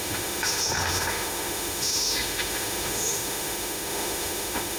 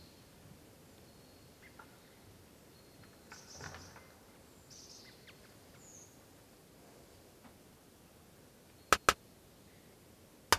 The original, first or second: second